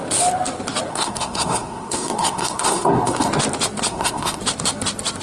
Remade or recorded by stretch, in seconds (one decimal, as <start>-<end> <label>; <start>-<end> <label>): 0.0-0.9 recorded; 0.9-3.3 remade; 3.3-3.9 recorded; 3.9-4.4 remade; 4.4-5.2 recorded